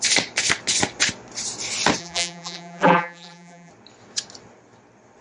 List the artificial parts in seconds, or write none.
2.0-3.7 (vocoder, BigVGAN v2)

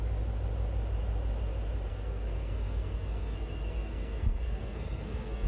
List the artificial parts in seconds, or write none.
1.9-5.5 (codec, SNAC)

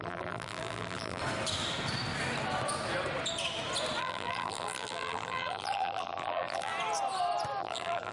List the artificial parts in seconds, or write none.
0.0-1.2 (vocoder, BigVGAN v2); 4.0-6.7; 7.6-8.1

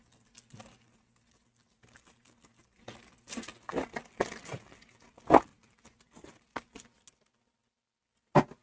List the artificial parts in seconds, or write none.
none

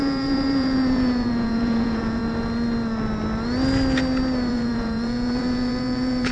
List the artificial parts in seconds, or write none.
0.0-2.2 (vocoder, Vocos); 4.5-6.3

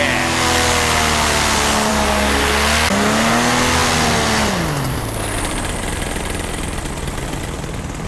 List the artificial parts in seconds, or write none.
none

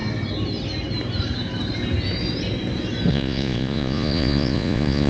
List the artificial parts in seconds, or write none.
3.1-5.1 (vocoder, Vocos)

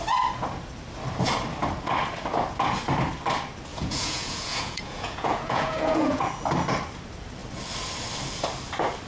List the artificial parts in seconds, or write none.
3.7-6.2 (vocoder, Vocos)